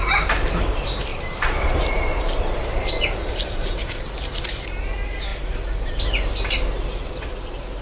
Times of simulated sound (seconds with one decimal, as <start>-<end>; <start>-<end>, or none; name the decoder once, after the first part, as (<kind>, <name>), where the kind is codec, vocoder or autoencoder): 1.1-4.1 (vocoder, BigVGAN v2); 5.3-5.9